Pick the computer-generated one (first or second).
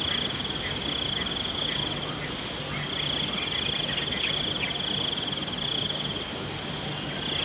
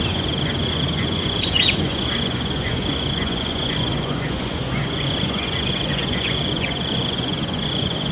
second